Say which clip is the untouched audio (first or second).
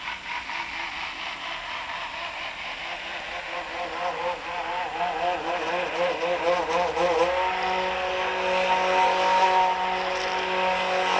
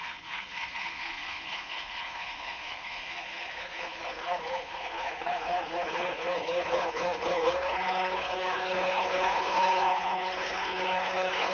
first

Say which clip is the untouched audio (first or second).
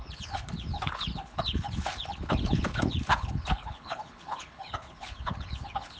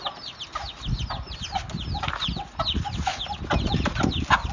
second